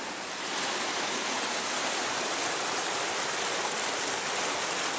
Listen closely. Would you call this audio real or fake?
real